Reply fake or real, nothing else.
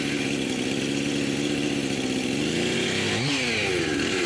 real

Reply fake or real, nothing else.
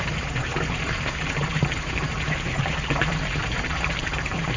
fake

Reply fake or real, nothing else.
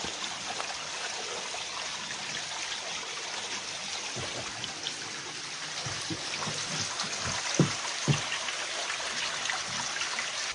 real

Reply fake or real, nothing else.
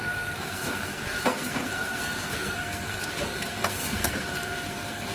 fake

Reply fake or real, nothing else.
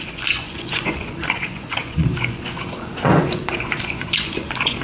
fake